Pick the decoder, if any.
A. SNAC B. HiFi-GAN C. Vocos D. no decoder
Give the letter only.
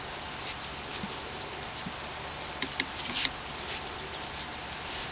D